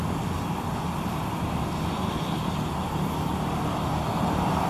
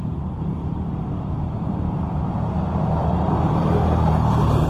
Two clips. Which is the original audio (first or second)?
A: first